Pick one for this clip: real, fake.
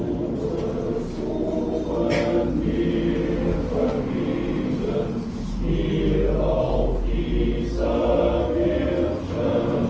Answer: real